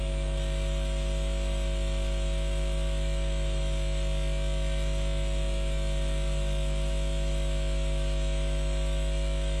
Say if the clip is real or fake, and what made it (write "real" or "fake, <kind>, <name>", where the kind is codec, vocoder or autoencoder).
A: fake, autoencoder, DAC-VAE